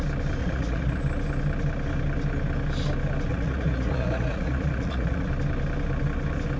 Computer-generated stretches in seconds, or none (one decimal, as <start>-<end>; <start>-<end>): 0.4-1.0; 3.3-5.3